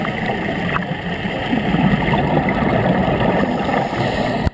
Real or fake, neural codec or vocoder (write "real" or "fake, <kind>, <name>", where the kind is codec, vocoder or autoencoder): real